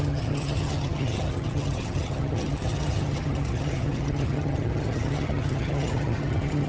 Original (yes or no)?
no